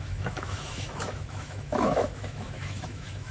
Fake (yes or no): yes